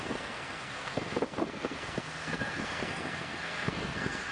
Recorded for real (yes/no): no